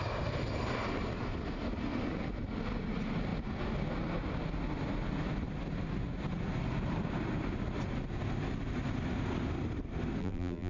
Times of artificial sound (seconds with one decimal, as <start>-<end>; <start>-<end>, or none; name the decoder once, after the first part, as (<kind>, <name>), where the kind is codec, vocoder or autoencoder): 10.2-10.7 (vocoder, BigVGAN v2)